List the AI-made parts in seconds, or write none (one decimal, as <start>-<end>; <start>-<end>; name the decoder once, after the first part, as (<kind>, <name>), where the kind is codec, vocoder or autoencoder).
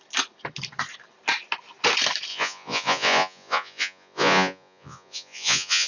2.3-5.9 (vocoder, Vocos)